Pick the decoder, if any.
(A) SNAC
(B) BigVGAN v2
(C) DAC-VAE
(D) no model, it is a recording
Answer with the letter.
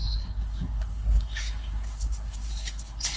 A